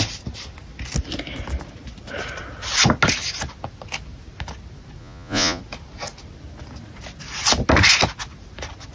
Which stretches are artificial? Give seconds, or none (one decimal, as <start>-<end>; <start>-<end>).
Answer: 5.0-5.6